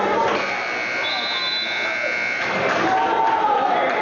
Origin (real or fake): real